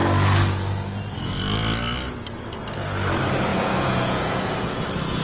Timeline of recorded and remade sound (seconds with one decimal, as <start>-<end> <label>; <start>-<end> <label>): 0.0-3.5 recorded; 3.5-4.8 remade; 4.8-5.2 recorded